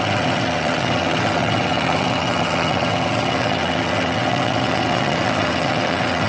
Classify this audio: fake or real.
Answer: fake